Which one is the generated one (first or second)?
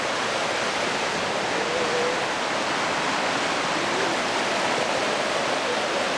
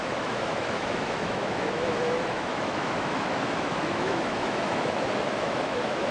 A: second